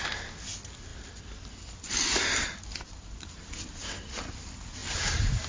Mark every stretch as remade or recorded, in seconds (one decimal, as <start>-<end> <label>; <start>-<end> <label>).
0.0-5.5 recorded